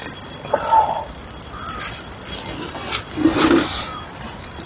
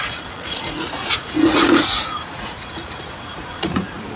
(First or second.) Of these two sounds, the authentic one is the first